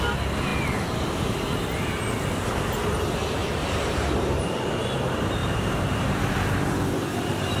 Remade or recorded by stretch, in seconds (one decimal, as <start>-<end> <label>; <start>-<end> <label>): 0.0-3.4 recorded; 3.4-4.8 remade; 4.8-5.4 recorded; 5.4-6.1 remade; 6.1-7.6 recorded